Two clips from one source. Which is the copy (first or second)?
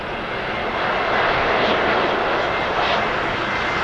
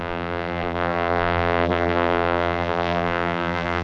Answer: second